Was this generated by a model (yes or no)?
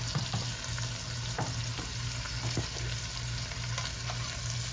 no